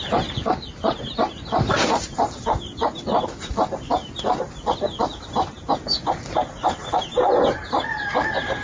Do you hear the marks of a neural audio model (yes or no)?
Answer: yes